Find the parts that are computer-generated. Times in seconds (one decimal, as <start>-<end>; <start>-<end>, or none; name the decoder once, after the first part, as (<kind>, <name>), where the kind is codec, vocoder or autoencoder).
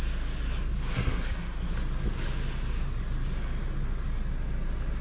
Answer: 0.9-1.7 (codec, SNAC)